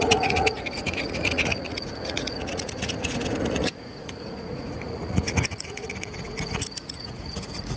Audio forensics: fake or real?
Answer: fake